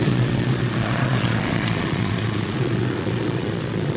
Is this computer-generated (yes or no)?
yes